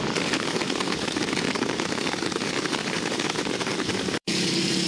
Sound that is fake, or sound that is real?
fake